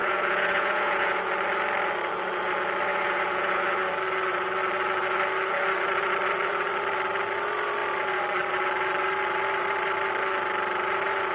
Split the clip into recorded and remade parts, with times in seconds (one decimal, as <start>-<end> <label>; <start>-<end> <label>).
0.0-1.3 remade; 1.3-2.9 recorded; 2.9-3.9 remade; 3.9-11.3 recorded